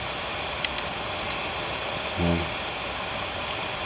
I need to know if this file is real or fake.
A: real